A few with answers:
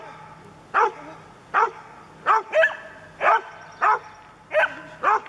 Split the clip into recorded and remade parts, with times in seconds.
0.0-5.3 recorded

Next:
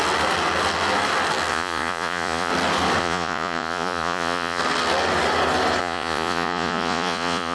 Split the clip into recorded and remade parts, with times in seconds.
0.0-1.5 recorded; 1.5-2.5 remade; 2.5-3.0 recorded; 3.0-4.6 remade; 4.6-5.8 recorded; 5.8-7.5 remade